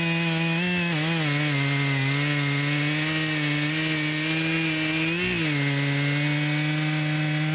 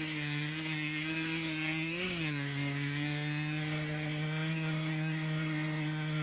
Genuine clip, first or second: first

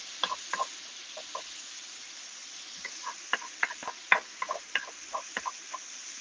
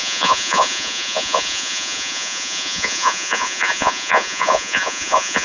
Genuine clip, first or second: first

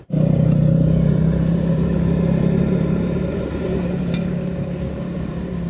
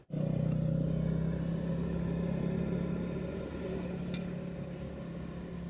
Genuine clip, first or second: second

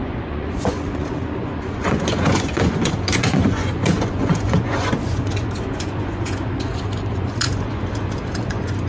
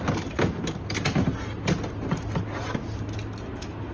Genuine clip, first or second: second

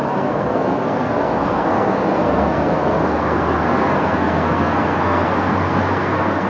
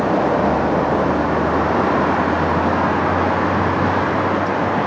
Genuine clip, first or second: second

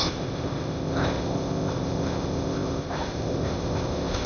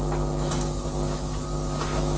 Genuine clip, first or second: second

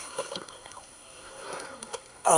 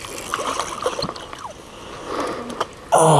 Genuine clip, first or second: second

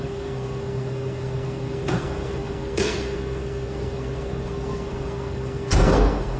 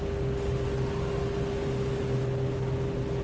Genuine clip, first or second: second